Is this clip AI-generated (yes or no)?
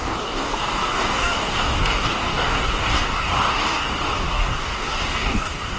yes